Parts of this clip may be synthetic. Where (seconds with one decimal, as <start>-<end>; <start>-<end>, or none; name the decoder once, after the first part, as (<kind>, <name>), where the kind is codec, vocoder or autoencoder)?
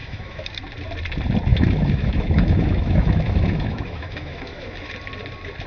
0.0-0.6 (autoencoder, DAC-VAE); 1.5-4.9